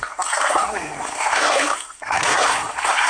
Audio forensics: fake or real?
fake